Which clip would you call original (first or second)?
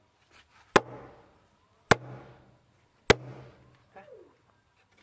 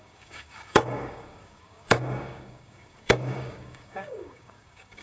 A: first